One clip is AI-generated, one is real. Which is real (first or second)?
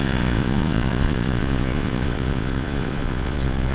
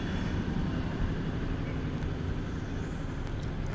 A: second